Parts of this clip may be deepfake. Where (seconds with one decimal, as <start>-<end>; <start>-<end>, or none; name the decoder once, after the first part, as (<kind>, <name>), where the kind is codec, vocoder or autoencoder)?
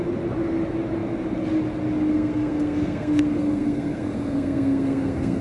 2.1-5.4 (codec, SNAC)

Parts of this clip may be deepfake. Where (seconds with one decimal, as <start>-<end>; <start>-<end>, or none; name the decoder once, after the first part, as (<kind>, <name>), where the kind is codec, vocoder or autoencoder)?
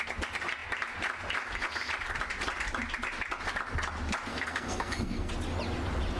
4.3-5.3 (codec, SNAC)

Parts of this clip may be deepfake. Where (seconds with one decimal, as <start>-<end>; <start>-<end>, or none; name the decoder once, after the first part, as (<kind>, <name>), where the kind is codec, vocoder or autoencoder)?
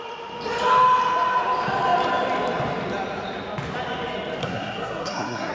4.4-5.5 (codec, SNAC)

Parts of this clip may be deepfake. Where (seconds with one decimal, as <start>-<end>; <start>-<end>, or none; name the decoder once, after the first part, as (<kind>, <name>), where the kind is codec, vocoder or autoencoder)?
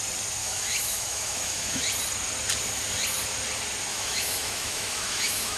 0.4-1.8 (autoencoder, DAC-VAE); 3.9-5.6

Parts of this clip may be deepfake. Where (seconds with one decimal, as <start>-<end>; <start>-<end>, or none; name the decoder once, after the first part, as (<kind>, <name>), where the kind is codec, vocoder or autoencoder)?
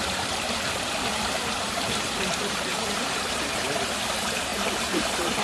0.0-5.4 (vocoder, BigVGAN v2)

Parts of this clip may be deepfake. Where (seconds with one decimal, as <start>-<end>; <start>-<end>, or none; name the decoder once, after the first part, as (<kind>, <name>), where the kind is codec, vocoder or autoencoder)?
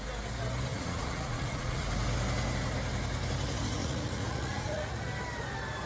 0.7-1.9 (vocoder, Vocos); 3.8-5.0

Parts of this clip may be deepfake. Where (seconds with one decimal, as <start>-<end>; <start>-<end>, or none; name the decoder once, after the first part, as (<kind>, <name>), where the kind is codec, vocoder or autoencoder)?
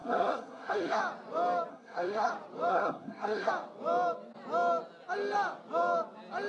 0.0-1.0 (codec, SNAC); 1.7-2.3; 2.7-3.5